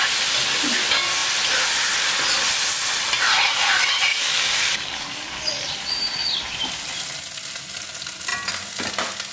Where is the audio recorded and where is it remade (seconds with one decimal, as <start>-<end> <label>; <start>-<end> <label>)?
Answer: 0.0-4.1 recorded; 4.1-5.5 remade; 5.5-9.3 recorded